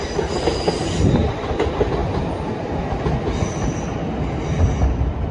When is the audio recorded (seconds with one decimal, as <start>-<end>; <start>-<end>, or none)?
0.0-5.3